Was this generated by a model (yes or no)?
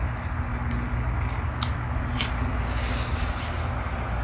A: no